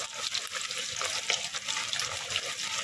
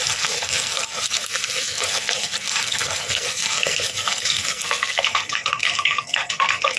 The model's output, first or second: second